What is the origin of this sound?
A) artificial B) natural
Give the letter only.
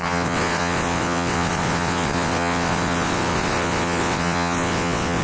A